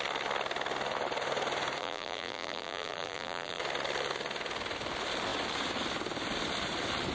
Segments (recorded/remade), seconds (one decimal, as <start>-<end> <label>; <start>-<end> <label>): 0.0-1.8 recorded; 1.8-3.6 remade; 3.6-7.1 recorded